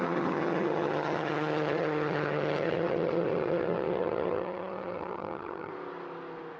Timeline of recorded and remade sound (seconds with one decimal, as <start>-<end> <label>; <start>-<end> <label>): 0.0-5.7 remade; 5.7-6.6 recorded